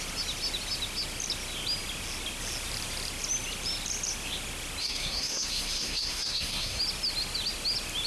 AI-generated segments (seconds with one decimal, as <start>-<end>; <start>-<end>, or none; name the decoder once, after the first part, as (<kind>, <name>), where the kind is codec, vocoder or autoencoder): 4.8-6.8 (codec, SNAC)